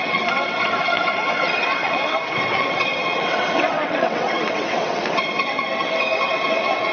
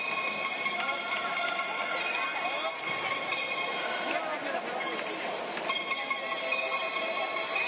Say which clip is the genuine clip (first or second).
second